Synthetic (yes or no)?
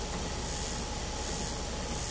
no